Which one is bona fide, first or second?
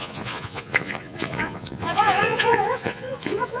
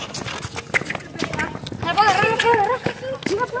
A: second